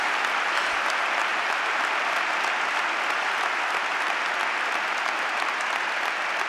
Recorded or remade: recorded